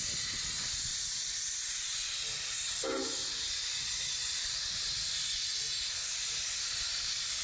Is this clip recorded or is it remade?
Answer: recorded